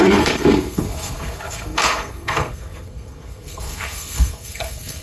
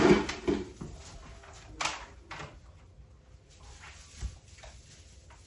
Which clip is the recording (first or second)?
second